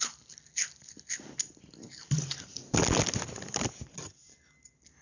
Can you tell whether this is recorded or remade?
recorded